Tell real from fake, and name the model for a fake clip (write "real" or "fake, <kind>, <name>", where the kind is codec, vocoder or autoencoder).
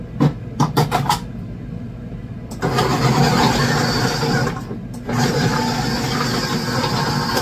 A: real